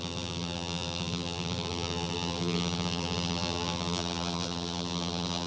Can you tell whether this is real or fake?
fake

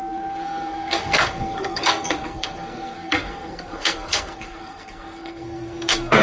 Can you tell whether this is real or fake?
fake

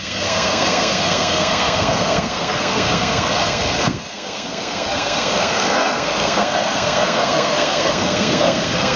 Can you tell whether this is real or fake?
fake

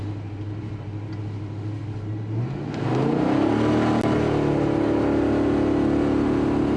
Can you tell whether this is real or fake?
real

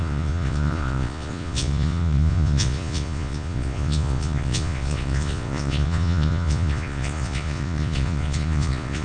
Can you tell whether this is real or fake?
fake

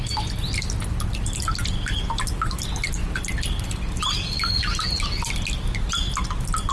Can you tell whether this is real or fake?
real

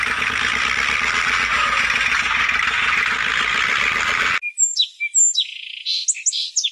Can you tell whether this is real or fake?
real